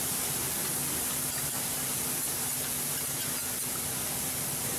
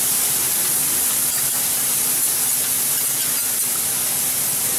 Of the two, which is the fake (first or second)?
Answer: first